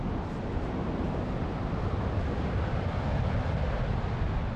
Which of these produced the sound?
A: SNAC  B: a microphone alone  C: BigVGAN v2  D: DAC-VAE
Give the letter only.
B